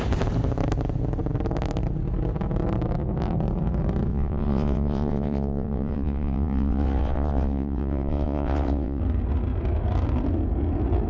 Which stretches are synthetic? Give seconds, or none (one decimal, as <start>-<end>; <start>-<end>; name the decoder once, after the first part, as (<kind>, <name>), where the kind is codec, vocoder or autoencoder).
4.1-9.0 (vocoder, WaveNeXt)